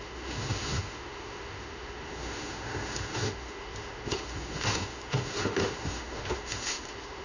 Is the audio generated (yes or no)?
yes